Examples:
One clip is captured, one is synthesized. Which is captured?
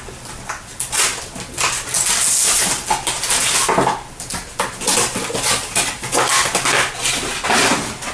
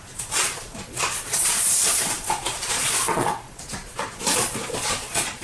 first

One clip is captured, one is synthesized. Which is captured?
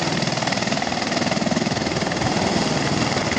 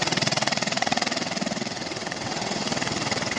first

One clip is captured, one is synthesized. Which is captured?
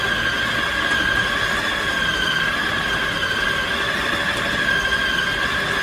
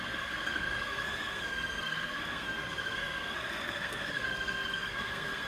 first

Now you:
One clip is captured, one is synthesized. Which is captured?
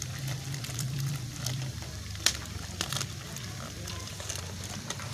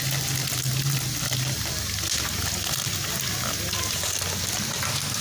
second